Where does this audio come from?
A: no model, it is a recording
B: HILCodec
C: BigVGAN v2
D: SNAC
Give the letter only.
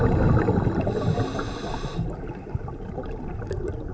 A